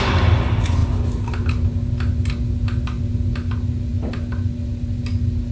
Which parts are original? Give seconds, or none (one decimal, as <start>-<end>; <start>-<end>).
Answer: 0.0-5.5